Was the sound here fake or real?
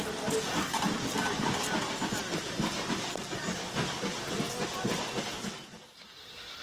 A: real